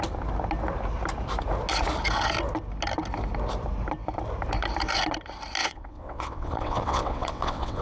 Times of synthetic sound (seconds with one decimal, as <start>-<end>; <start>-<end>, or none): 5.6-7.8